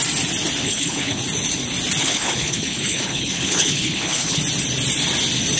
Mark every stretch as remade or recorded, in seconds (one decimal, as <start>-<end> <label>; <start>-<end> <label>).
0.0-0.6 recorded; 0.6-1.2 remade; 1.2-2.0 recorded; 2.0-4.4 remade; 4.4-5.6 recorded